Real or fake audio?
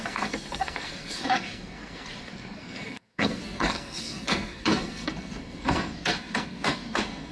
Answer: fake